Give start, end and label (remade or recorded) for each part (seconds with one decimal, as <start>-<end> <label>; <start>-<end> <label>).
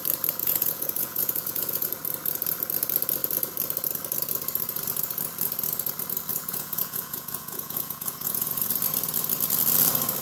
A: 0.0-0.4 recorded; 0.4-1.9 remade; 1.9-6.3 recorded; 6.3-8.7 remade; 8.7-10.2 recorded